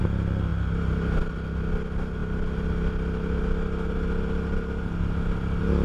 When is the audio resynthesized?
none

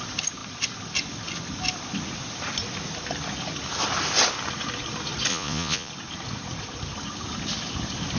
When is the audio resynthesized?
5.3-5.9 (vocoder, Vocos)

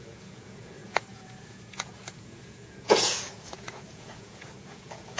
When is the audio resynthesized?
0.0-5.2 (vocoder, Vocos)

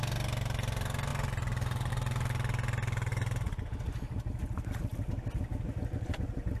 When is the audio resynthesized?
none

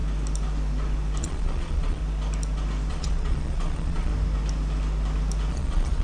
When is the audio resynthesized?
1.2-2.0 (vocoder, Vocos); 2.9-4.1; 5.5-6.0

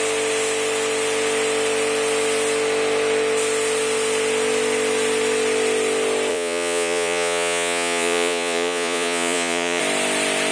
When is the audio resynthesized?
6.3-9.8 (vocoder, Vocos)